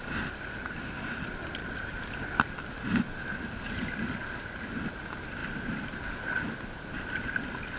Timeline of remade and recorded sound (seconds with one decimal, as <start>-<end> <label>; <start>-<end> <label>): 0.0-7.8 recorded